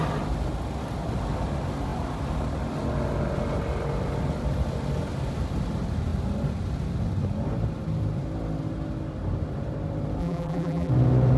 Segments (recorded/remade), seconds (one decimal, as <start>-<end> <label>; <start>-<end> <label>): 0.0-10.2 recorded; 10.2-10.9 remade; 10.9-11.4 recorded